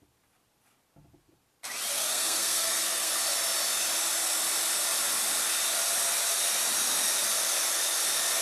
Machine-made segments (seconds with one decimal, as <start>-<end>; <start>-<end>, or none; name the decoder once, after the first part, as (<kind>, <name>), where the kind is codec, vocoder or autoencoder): 1.9-3.1 (codec, SNAC)

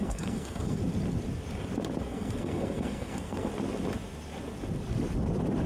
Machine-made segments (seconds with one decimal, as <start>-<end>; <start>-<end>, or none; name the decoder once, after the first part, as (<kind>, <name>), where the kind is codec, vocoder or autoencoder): 0.0-0.8 (codec, SNAC); 2.0-3.5

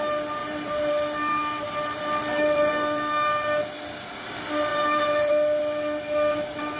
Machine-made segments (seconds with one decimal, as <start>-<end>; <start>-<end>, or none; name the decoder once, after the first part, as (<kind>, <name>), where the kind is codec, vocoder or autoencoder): 0.4-2.7 (vocoder, BigVGAN v2); 4.7-5.3

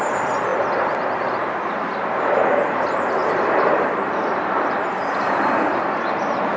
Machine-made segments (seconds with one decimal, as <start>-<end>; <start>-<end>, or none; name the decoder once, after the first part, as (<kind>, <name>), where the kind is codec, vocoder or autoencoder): 0.5-1.1 (vocoder, BigVGAN v2); 3.2-5.9

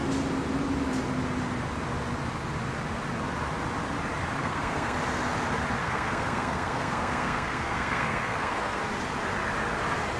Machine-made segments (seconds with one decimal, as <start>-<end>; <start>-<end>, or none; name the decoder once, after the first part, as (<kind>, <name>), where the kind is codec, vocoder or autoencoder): 4.4-5.0 (codec, SNAC); 5.8-8.8